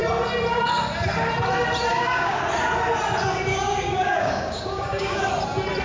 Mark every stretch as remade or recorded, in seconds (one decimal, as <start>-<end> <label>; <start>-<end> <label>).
0.0-1.9 recorded; 1.9-2.4 remade; 2.4-3.5 recorded; 3.5-5.2 remade; 5.2-5.8 recorded